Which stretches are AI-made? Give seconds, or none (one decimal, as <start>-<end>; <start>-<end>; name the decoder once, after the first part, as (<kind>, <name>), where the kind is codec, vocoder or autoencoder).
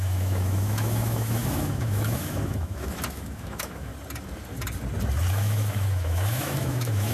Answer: 0.0-3.9 (autoencoder, DAC-VAE); 5.3-7.1